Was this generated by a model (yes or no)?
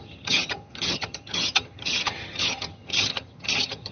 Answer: yes